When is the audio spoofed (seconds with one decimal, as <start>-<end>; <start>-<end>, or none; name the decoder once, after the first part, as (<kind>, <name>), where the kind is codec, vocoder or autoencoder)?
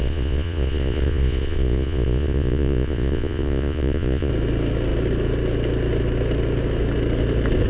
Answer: 0.0-4.3 (vocoder, Vocos)